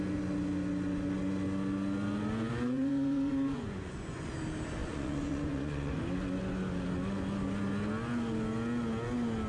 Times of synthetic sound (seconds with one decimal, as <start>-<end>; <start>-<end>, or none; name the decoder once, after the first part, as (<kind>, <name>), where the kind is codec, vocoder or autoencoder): 2.5-4.3 (vocoder, Vocos); 4.8-5.9